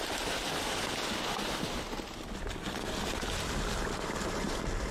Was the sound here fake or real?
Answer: real